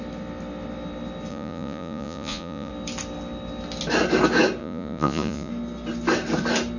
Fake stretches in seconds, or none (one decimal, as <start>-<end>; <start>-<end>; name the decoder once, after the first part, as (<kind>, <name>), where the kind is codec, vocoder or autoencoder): 1.3-2.7 (vocoder, Vocos); 4.6-5.5